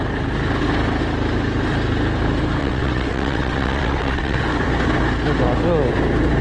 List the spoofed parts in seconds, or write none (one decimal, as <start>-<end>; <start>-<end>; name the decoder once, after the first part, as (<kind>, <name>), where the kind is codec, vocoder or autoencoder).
2.6-4.4 (vocoder, WaveNeXt)